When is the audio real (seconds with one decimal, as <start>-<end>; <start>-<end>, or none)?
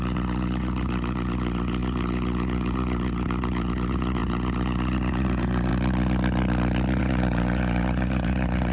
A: 5.7-7.0